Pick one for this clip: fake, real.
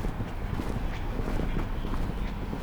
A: real